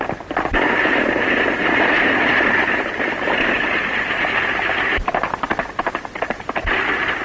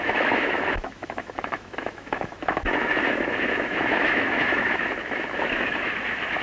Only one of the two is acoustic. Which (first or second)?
first